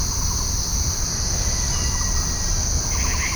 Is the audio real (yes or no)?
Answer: yes